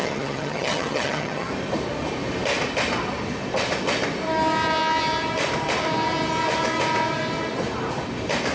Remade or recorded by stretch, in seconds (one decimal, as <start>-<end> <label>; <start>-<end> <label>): 0.0-1.5 remade; 1.5-8.5 recorded